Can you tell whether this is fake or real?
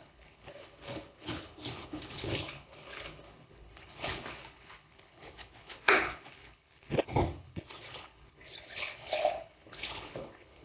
fake